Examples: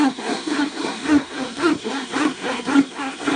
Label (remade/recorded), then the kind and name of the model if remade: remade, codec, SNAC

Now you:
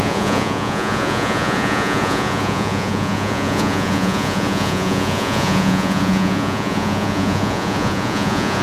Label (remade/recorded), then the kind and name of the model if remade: remade, vocoder, Vocos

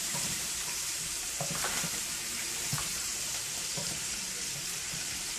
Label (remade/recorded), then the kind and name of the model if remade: remade, vocoder, BigVGAN v2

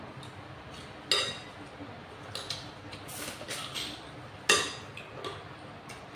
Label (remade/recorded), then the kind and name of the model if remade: recorded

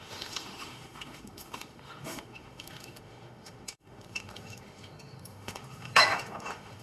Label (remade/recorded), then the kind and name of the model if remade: remade, autoencoder, DAC-VAE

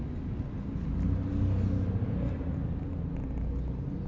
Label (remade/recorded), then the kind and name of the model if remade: recorded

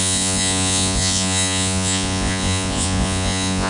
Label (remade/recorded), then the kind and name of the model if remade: remade, vocoder, Vocos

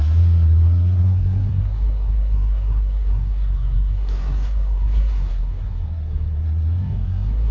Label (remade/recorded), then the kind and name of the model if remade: remade, codec, SNAC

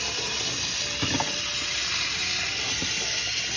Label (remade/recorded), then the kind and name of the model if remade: recorded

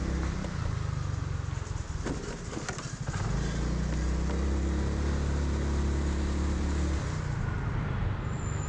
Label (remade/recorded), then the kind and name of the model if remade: recorded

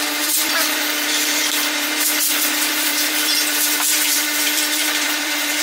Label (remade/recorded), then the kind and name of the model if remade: remade, vocoder, BigVGAN v2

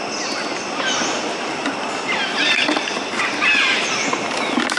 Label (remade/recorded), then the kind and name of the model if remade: recorded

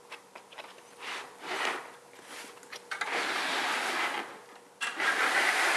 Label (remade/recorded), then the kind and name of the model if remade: recorded